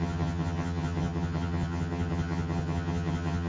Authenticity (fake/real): fake